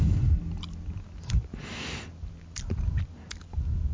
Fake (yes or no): no